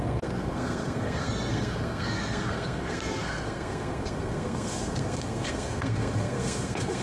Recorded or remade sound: remade